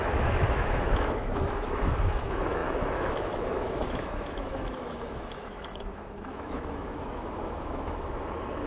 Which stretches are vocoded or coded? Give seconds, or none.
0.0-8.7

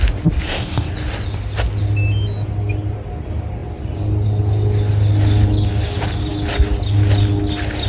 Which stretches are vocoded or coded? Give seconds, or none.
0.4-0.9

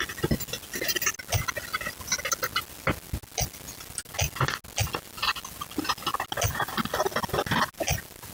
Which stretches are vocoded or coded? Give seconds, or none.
none

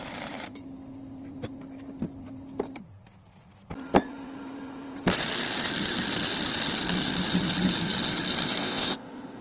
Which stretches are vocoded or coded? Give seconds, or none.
8.6-9.4